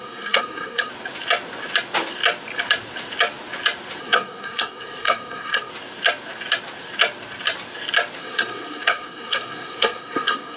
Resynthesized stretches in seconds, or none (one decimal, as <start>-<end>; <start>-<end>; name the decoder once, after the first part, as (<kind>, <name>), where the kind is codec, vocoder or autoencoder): 0.0-0.9 (codec, SNAC); 4.0-5.7; 8.2-10.6

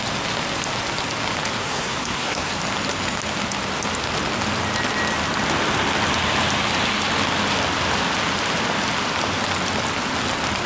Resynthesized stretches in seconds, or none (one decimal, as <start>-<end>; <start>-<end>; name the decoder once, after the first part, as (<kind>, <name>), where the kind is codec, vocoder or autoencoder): 1.6-2.5 (codec, SNAC)

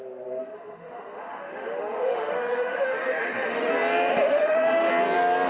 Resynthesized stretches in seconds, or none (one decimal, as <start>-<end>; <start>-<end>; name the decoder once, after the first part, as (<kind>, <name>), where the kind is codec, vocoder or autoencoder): 0.4-3.7 (autoencoder, DAC-VAE); 4.3-4.9

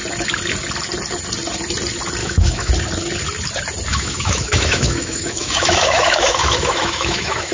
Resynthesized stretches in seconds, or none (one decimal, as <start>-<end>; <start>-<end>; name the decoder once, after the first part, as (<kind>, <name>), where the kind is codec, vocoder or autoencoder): 2.2-2.7 (autoencoder, DAC-VAE); 3.9-7.5